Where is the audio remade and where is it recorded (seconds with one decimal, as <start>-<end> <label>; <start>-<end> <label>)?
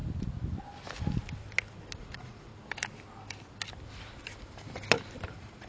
0.0-2.0 recorded; 2.0-2.5 remade; 2.5-5.3 recorded; 5.3-5.7 remade